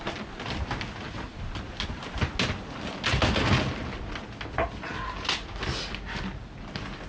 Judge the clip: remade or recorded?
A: recorded